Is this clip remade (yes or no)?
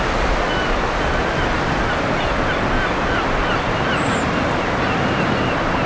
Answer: no